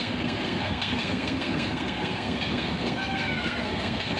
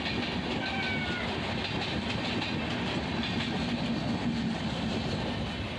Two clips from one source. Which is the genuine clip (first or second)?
second